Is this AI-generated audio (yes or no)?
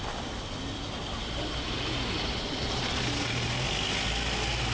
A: no